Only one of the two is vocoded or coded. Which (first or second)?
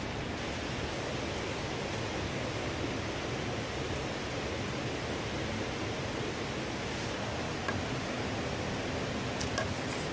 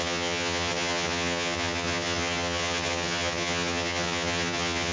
second